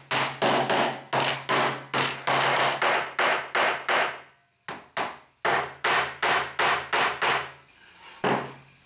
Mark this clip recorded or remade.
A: recorded